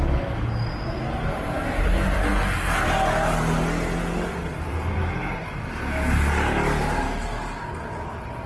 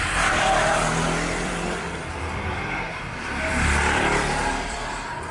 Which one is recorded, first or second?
first